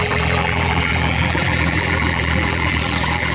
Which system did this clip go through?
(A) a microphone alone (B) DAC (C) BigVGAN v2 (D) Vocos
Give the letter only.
C